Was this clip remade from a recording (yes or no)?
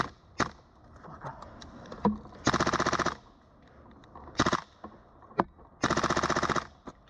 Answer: no